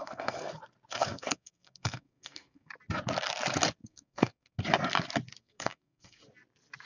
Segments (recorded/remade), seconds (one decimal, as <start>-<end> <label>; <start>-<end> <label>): 0.0-0.5 remade; 0.5-0.9 recorded; 0.9-2.7 remade; 2.7-3.8 recorded; 3.8-4.6 remade; 4.6-5.4 recorded; 5.4-6.2 remade; 6.2-6.9 recorded